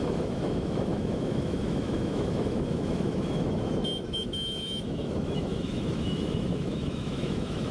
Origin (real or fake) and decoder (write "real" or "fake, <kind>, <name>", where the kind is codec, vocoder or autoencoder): fake, autoencoder, DAC-VAE